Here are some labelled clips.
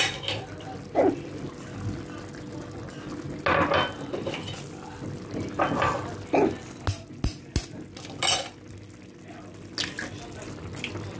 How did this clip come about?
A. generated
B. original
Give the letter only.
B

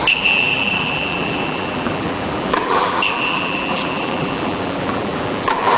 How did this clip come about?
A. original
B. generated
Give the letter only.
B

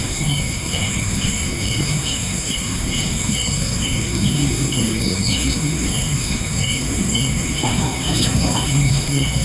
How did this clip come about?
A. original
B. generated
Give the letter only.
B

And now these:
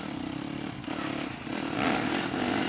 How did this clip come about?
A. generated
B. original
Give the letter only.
B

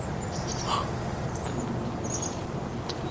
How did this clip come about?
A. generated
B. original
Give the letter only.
B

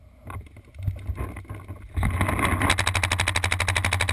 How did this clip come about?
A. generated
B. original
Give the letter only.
B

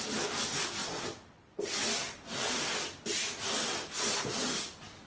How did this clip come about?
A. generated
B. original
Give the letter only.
B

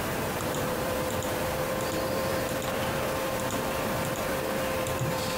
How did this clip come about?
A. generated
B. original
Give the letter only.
A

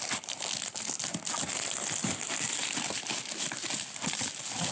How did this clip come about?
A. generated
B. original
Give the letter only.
B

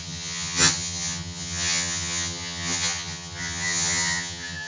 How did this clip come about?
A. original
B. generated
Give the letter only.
B